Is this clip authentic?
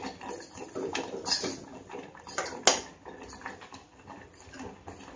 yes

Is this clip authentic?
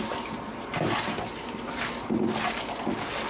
yes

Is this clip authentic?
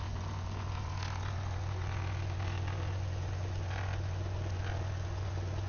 no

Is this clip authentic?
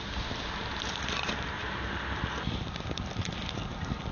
yes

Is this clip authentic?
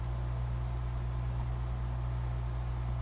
yes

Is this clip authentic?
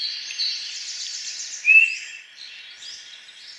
yes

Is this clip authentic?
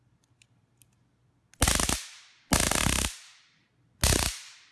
yes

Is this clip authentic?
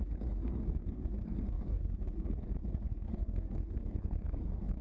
no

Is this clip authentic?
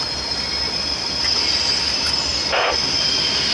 yes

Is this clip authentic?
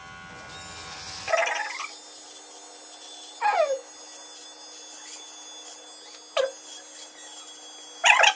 yes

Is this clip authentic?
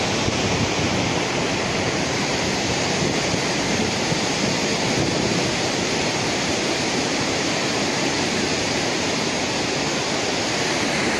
no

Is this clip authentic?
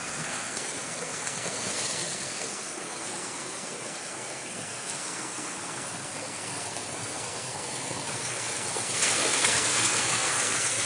no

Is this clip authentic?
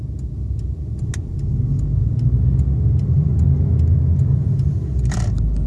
yes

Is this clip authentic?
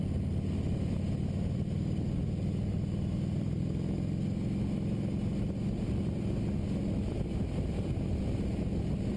yes